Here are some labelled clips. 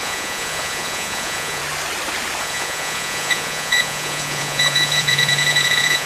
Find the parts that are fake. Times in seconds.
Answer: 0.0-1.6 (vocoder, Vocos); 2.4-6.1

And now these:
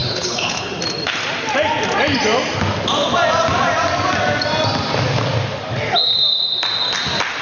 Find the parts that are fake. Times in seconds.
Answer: 0.0-0.7 (codec, HILCodec)

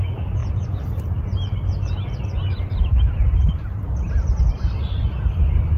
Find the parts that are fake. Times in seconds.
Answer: none

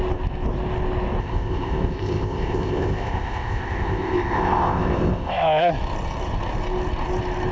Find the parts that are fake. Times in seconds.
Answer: 1.2-5.7 (codec, ZipCodec)

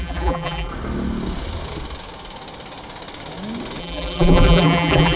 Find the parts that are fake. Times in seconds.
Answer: 0.0-0.7 (vocoder, BigVGAN v2); 3.8-5.2

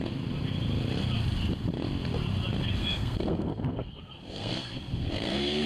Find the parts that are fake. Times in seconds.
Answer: 2.8-5.7 (codec, SNAC)

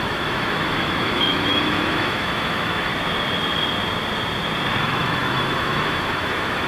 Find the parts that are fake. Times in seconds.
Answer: 0.0-2.9 (autoencoder, DAC-VAE); 4.8-6.7

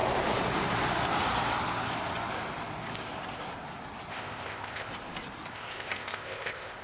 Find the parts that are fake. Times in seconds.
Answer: 4.1-4.9 (codec, ZipCodec); 5.5-6.8